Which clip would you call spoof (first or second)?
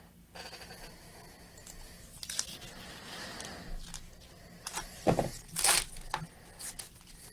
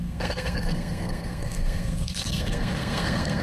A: second